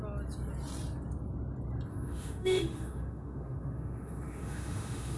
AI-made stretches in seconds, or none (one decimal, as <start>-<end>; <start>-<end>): 1.9-5.2